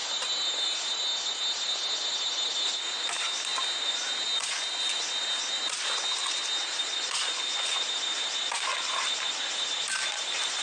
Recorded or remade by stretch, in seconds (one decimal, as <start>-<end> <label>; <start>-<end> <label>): 0.0-3.5 recorded; 3.5-7.2 remade; 7.2-10.6 recorded